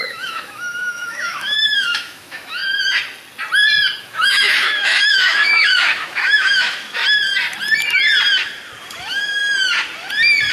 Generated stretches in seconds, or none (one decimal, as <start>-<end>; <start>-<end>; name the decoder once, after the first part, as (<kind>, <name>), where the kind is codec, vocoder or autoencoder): 0.0-2.6 (autoencoder, DAC-VAE); 4.0-7.0; 9.0-9.4